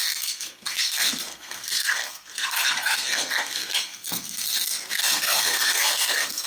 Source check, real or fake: fake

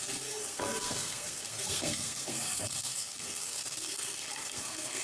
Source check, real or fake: fake